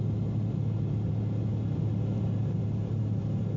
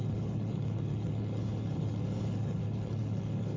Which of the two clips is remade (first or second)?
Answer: second